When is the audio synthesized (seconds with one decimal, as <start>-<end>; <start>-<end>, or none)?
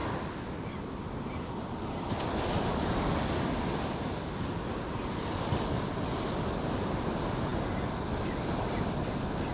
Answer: none